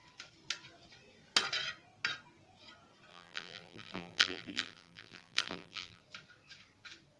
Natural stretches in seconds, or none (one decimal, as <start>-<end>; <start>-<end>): 0.0-3.1; 6.0-7.2